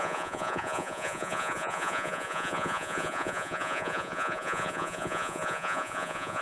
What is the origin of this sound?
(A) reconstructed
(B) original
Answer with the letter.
A